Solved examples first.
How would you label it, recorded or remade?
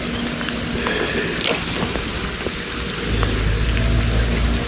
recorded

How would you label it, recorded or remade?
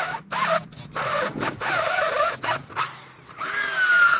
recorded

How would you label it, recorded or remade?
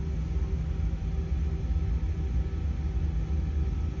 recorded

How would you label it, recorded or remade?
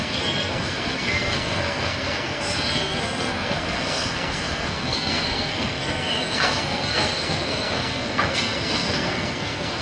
remade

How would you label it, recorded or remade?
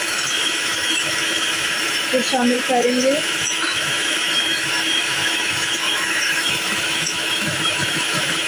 remade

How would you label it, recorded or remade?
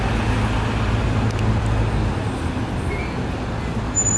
recorded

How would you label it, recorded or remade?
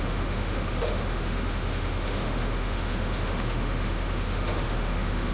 remade